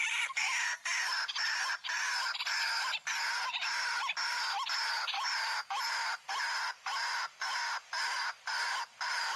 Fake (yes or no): no